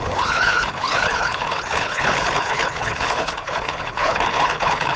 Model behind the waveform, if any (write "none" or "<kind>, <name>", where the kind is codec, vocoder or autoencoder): codec, HILCodec